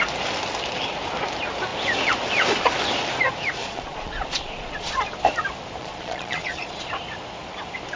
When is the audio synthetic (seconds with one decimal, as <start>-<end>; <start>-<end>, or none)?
3.6-5.1; 5.8-6.9